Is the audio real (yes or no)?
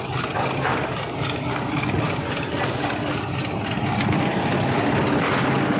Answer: yes